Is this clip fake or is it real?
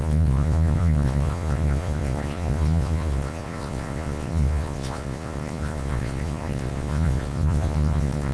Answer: fake